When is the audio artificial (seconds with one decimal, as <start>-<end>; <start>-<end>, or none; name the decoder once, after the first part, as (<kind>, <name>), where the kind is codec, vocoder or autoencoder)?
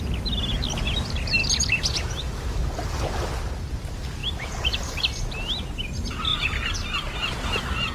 1.4-2.3 (vocoder, BigVGAN v2)